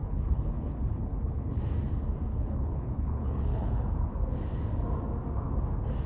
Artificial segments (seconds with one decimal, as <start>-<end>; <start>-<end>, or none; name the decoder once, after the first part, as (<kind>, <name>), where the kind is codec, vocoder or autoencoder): 0.0-1.6 (codec, HILCodec); 2.3-4.1